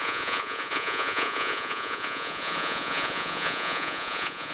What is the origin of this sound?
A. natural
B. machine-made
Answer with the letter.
B